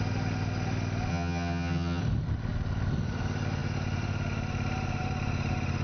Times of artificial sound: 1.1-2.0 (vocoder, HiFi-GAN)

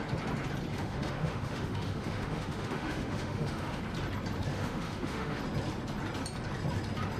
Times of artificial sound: 0.7-3.8 (autoencoder, DAC-VAE); 4.5-5.4

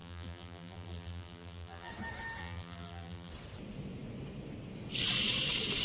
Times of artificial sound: 0.0-1.9 (vocoder, BigVGAN v2); 2.4-3.3

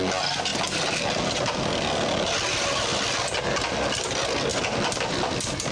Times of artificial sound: none

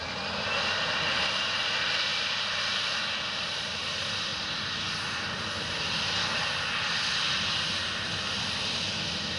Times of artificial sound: 0.0-4.3 (vocoder, BigVGAN v2); 8.6-9.4